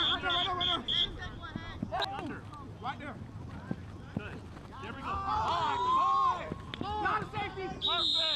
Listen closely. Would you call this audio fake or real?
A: real